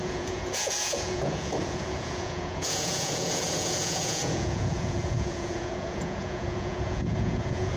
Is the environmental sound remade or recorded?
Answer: remade